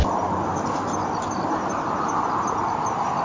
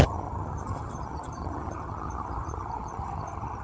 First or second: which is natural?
first